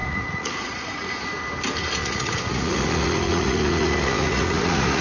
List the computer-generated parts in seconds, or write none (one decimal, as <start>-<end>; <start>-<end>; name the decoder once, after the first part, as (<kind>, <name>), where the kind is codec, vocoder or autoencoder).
0.0-1.3 (vocoder, Vocos); 2.0-5.0